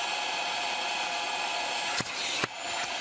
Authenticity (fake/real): real